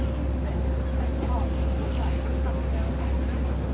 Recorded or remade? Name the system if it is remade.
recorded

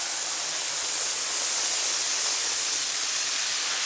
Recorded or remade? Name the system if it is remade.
recorded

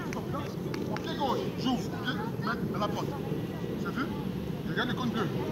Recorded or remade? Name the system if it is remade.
recorded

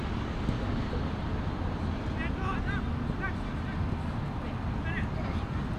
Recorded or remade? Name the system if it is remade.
recorded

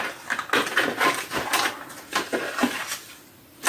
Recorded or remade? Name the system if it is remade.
recorded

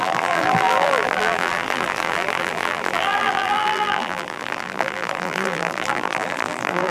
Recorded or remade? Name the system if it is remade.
remade, vocoder, BigVGAN v2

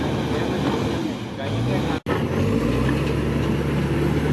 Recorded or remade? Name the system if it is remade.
recorded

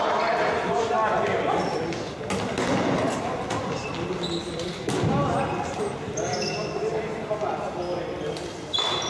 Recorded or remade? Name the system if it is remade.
recorded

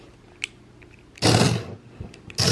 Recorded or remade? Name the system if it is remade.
recorded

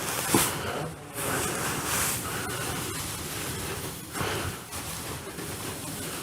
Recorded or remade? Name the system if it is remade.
remade, vocoder, BigVGAN v2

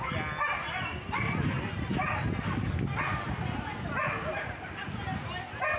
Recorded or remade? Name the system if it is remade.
recorded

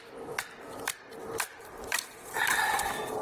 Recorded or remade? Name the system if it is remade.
remade, vocoder, BigVGAN v2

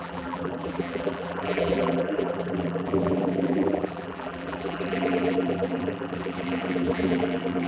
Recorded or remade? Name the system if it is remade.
remade, vocoder, BigVGAN v2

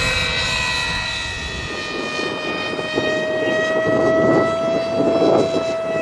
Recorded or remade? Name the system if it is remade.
recorded